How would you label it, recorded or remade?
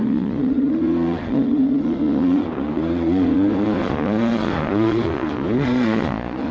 remade